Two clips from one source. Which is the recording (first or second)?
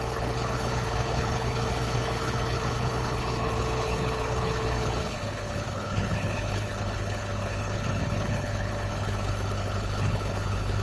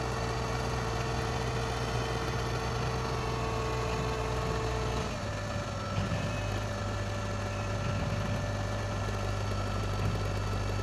second